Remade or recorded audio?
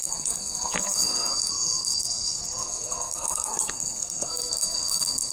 remade